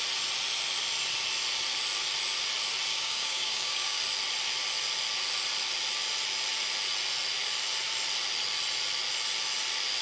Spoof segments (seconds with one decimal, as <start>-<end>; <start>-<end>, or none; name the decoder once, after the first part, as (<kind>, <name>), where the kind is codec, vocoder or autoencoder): 2.9-4.0 (codec, DAC)